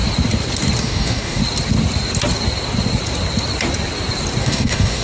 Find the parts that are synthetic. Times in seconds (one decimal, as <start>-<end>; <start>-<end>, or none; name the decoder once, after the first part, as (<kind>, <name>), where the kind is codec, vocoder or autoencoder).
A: 0.8-1.4 (codec, DAC); 4.4-5.0